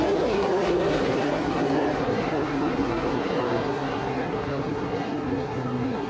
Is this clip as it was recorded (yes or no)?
no